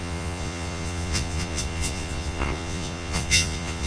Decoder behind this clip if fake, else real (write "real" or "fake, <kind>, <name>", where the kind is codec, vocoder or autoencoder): fake, vocoder, Vocos